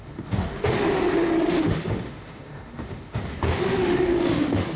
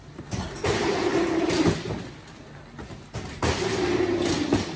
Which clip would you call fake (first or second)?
first